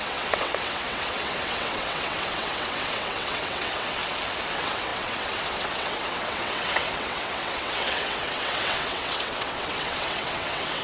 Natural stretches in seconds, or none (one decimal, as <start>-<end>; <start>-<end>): 4.0-4.5